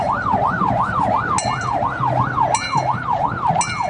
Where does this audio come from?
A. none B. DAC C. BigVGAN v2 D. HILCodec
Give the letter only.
A